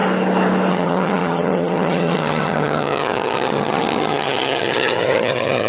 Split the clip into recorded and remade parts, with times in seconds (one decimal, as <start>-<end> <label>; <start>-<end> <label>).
0.0-0.7 recorded; 0.7-5.7 remade